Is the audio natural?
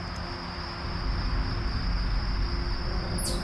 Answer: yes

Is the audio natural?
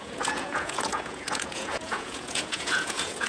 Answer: no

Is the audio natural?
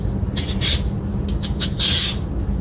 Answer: yes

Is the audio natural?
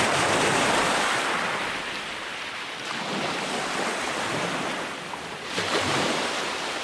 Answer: yes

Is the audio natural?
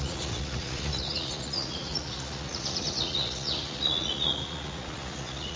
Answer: no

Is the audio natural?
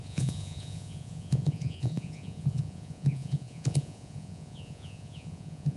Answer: no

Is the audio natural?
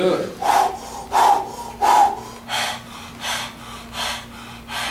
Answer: yes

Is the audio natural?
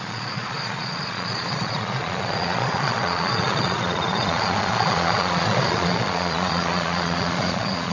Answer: no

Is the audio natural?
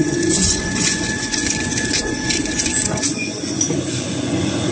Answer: no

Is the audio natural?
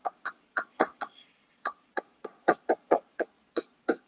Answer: no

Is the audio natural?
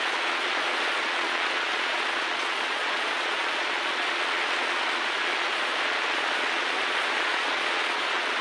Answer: no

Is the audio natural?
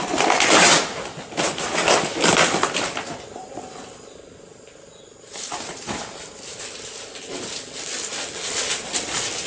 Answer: yes